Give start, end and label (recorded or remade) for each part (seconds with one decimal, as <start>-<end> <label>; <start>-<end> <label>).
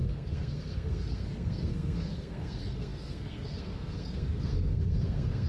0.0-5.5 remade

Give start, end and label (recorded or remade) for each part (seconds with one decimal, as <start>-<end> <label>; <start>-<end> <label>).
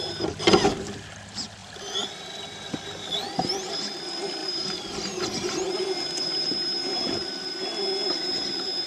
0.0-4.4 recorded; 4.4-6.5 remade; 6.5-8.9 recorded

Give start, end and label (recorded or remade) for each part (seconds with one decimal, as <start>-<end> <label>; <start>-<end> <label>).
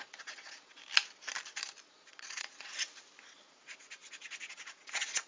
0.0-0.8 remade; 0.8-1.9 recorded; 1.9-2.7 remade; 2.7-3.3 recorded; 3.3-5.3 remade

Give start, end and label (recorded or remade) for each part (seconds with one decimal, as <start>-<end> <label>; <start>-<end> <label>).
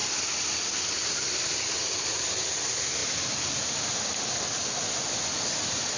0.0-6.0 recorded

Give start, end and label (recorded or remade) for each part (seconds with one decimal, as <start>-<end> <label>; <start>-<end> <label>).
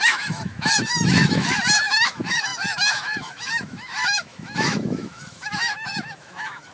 0.0-6.7 remade